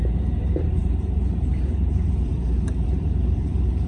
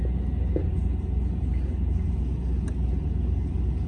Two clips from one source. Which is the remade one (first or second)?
first